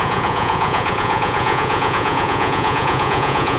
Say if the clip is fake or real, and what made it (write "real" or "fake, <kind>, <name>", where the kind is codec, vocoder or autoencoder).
fake, vocoder, Vocos